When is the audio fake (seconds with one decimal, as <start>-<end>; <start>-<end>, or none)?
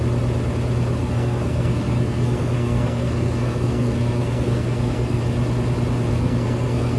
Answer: 1.0-5.2; 6.1-7.0